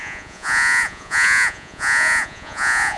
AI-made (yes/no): yes